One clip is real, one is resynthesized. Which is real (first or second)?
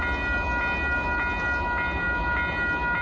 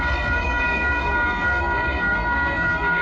first